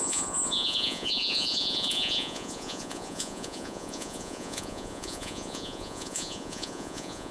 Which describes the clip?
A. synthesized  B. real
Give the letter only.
A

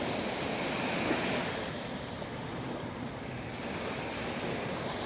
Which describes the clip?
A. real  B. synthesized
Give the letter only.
A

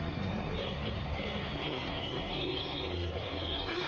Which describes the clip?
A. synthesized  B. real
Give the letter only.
A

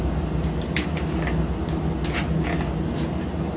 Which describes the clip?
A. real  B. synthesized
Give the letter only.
A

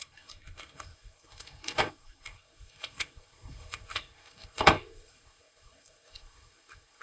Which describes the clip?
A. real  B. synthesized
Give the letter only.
B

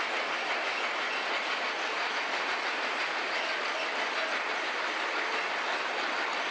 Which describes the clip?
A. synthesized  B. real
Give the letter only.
B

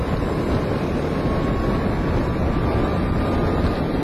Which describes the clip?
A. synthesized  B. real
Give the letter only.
B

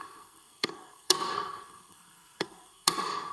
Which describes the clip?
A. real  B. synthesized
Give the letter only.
B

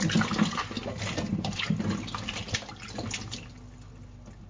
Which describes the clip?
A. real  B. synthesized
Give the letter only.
A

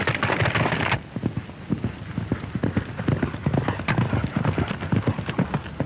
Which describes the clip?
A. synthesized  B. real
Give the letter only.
B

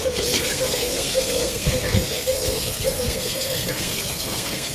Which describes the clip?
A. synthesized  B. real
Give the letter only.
A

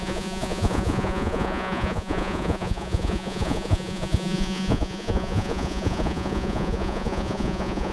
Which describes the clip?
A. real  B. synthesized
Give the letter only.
B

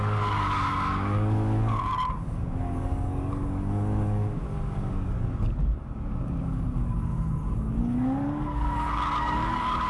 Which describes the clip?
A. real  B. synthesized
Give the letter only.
B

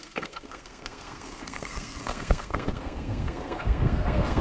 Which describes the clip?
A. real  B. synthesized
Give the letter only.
B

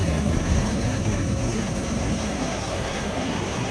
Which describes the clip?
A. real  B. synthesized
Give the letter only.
B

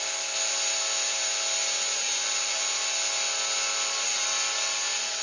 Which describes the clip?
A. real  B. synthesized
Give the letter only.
A